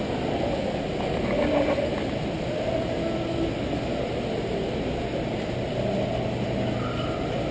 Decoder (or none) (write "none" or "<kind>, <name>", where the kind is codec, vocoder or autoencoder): none